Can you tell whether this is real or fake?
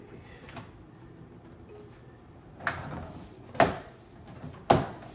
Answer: real